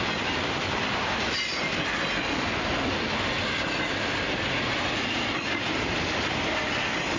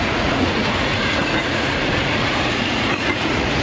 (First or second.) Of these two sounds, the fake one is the second